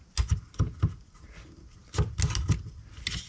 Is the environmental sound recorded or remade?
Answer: recorded